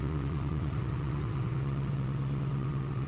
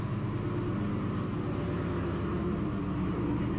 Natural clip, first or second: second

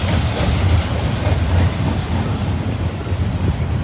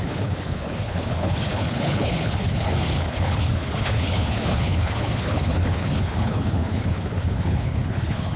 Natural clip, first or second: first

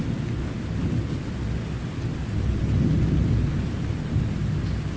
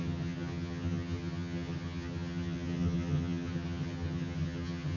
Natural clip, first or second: first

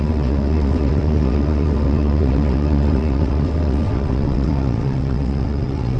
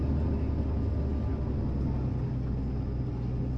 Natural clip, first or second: second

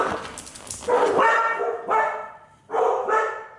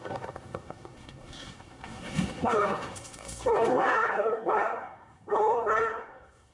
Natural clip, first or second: first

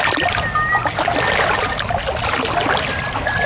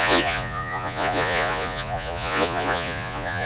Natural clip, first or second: first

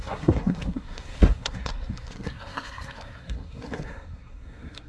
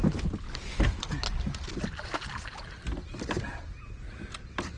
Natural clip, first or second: second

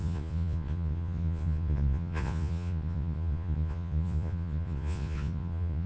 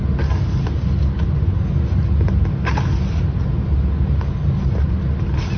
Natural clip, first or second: second